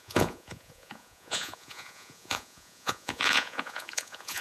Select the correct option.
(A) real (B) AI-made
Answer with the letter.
B